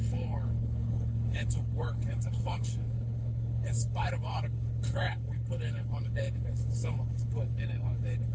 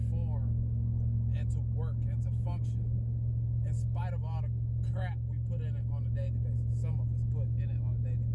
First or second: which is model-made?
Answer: first